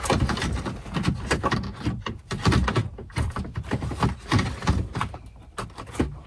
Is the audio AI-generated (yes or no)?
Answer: no